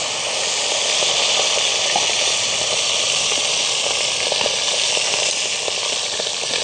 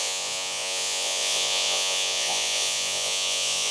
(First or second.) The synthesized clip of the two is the second